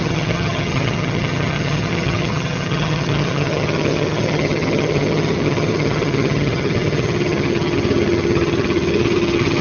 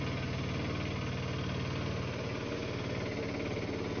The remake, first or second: first